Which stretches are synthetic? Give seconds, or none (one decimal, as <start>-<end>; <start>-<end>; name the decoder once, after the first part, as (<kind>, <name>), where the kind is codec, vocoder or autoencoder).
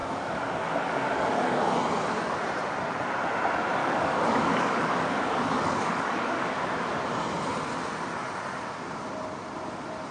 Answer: 0.0-1.8 (codec, DAC); 3.8-6.5